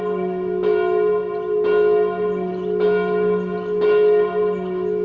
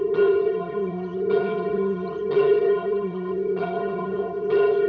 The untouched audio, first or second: first